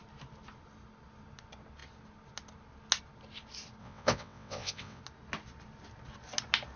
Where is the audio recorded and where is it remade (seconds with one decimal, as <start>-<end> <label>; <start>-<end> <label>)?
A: 0.0-3.8 recorded; 3.8-5.0 remade; 5.0-6.8 recorded